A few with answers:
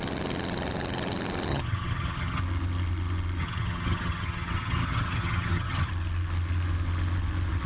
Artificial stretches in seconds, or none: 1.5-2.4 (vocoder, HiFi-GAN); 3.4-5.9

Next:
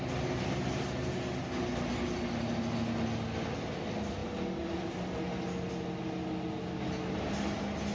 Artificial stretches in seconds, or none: none

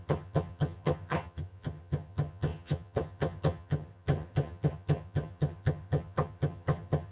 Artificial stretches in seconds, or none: 0.0-7.1 (vocoder, HiFi-GAN)

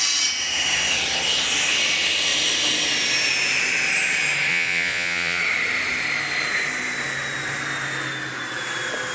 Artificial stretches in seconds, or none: 4.5-5.4 (vocoder, Vocos)

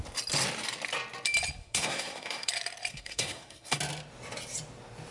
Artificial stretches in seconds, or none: 1.6-2.5 (codec, SNAC); 2.9-3.8